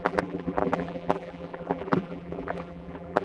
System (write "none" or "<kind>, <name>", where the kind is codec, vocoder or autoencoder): vocoder, BigVGAN v2